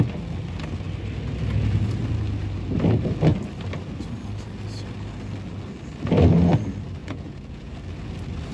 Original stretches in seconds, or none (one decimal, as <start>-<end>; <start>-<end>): 0.0-7.0; 7.7-8.5